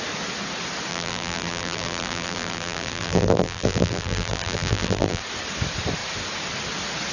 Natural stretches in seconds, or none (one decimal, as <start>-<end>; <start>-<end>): 0.0-0.9; 5.2-7.1